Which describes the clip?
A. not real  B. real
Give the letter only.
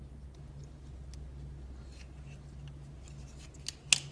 B